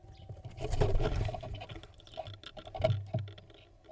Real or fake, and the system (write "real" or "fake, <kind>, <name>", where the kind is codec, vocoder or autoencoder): real